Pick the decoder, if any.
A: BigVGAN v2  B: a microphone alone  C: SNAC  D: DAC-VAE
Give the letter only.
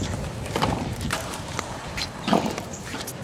A